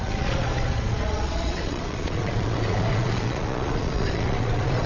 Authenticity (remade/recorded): remade